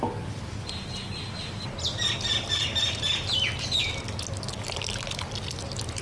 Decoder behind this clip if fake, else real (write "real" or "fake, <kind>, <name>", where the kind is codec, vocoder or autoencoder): real